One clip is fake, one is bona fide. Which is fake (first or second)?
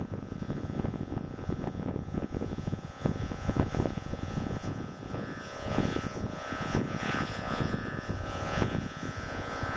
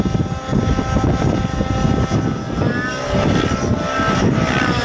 first